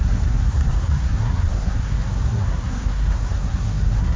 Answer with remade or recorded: remade